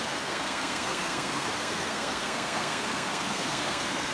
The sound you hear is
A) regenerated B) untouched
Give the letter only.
A